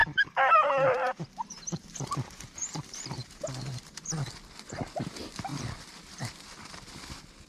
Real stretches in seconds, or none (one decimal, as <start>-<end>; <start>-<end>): 4.1-7.5